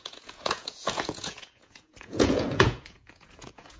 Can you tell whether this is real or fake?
fake